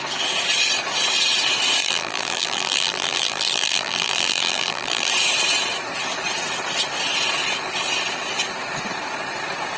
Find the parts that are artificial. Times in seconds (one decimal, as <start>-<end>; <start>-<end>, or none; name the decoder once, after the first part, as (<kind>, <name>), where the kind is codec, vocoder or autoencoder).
1.8-5.1 (vocoder, BigVGAN v2)